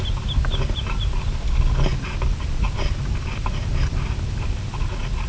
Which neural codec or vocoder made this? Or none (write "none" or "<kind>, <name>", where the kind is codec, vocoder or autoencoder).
none